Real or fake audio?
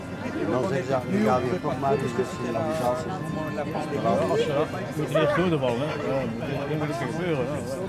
real